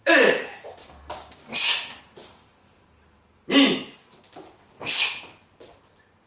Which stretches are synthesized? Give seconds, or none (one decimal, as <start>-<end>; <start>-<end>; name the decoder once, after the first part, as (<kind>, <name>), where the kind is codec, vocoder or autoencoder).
0.0-0.8 (vocoder, BigVGAN v2); 2.0-2.5